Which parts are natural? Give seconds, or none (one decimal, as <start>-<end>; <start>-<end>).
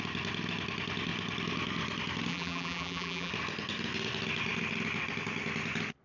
0.0-2.3; 3.3-6.0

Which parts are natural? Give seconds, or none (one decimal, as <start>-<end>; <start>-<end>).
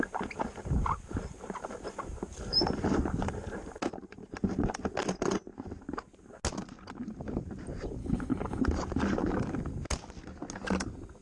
0.0-8.0; 8.6-11.2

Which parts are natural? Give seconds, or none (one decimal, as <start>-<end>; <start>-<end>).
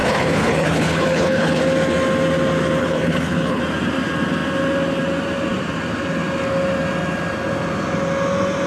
1.6-2.8; 3.6-8.7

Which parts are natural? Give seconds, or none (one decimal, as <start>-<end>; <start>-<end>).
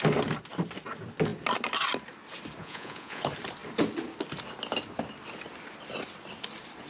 0.0-2.6; 3.2-6.9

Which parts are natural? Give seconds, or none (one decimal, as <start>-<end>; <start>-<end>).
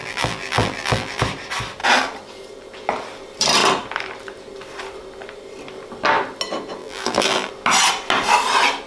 1.2-6.8; 7.5-8.9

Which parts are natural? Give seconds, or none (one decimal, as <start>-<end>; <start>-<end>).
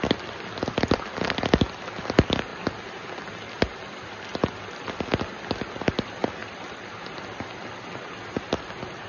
0.0-9.1